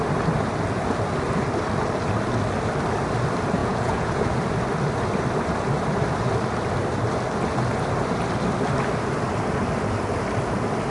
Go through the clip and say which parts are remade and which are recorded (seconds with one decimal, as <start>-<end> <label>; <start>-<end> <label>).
0.0-3.6 recorded; 3.6-4.2 remade; 4.2-10.9 recorded